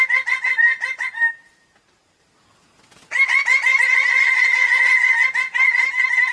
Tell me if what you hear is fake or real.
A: real